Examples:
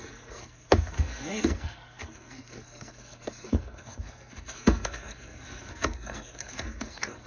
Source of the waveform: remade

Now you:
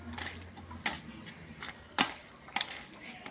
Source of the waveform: recorded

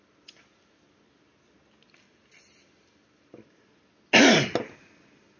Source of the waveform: recorded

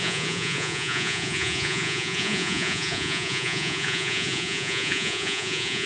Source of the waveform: remade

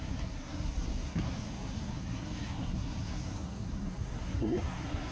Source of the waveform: remade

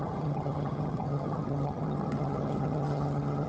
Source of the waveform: remade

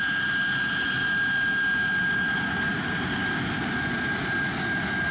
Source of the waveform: recorded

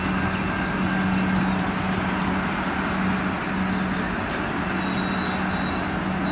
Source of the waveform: recorded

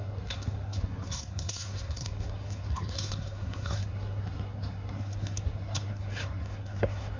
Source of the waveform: remade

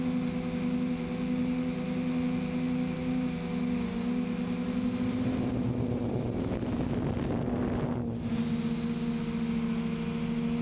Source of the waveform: recorded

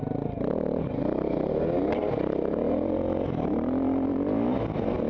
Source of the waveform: recorded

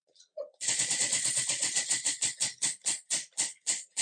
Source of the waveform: remade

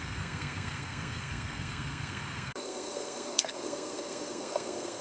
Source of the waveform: remade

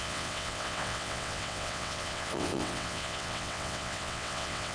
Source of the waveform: remade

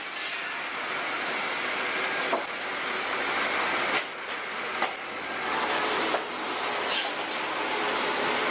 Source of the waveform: recorded